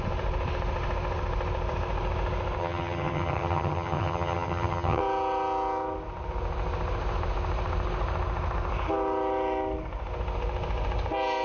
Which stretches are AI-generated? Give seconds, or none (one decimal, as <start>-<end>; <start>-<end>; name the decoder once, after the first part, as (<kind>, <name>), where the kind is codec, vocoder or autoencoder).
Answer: 2.6-5.0 (vocoder, HiFi-GAN)